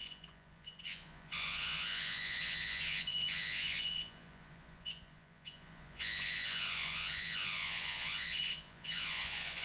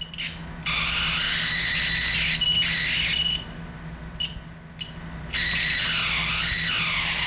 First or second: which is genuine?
second